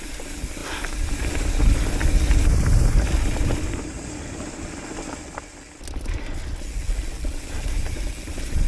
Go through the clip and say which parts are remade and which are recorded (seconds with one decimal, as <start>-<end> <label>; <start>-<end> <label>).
0.0-8.7 recorded